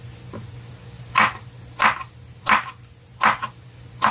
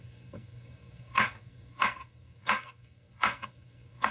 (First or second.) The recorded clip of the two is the first